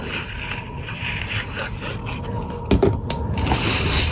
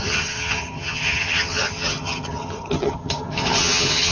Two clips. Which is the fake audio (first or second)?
second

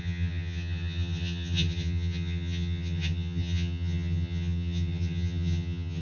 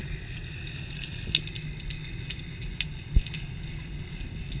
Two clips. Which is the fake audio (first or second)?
first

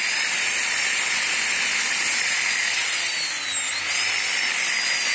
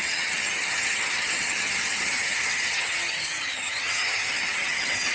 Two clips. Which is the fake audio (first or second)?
second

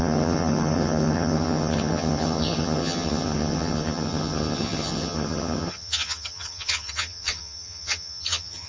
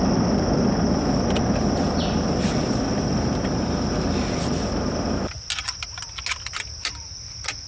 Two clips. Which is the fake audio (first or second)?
first